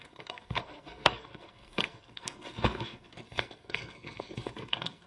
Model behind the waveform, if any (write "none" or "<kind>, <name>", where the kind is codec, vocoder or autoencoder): codec, SNAC